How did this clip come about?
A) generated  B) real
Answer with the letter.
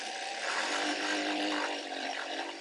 A